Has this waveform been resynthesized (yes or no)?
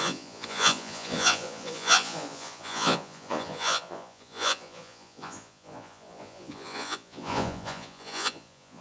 yes